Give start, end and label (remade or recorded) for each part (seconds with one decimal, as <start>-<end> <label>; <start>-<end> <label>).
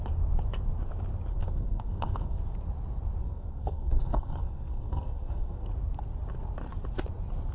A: 0.0-1.3 recorded; 1.3-2.4 remade; 2.4-3.2 recorded; 3.2-5.7 remade; 5.7-7.5 recorded